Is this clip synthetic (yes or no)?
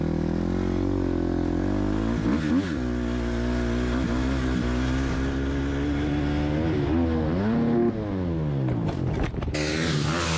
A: no